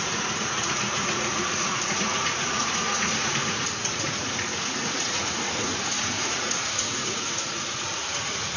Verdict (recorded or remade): remade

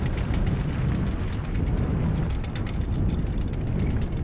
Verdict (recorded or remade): recorded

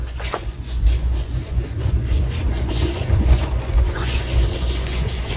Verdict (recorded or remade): remade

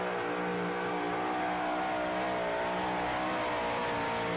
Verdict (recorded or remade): recorded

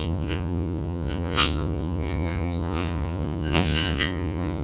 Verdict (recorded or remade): remade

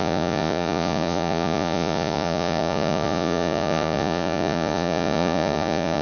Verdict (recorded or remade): remade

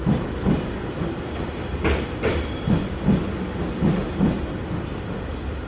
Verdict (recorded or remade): recorded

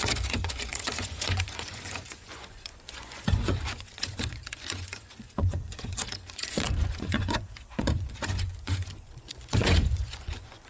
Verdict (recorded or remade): remade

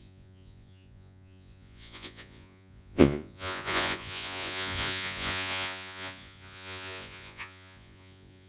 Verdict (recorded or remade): remade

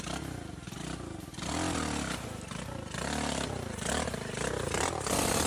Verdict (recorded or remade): recorded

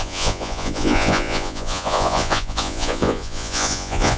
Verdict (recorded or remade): remade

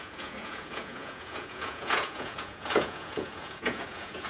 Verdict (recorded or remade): remade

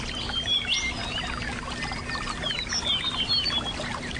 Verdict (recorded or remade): recorded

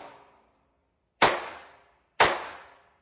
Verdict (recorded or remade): recorded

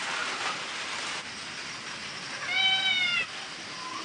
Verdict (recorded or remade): recorded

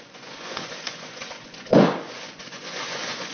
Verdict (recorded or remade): remade